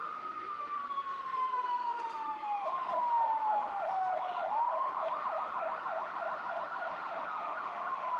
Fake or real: fake